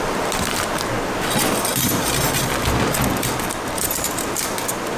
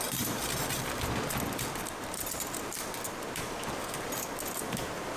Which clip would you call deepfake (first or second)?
second